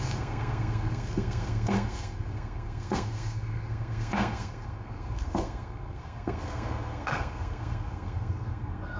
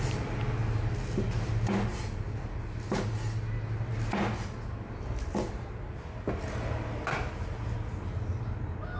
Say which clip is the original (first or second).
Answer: second